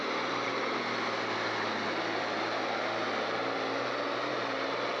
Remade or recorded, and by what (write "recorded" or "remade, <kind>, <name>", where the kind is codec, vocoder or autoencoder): recorded